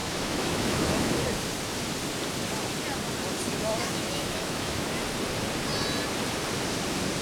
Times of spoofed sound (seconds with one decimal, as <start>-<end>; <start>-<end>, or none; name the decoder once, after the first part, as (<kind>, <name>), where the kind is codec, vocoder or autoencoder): 0.0-1.1 (autoencoder, DAC-VAE); 3.5-4.9